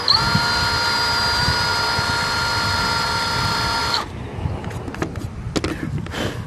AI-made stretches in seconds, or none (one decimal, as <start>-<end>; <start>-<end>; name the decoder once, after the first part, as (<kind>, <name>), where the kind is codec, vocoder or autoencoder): none